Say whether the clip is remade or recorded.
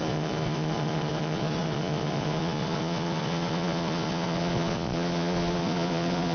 remade